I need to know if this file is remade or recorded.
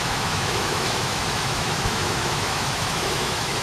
remade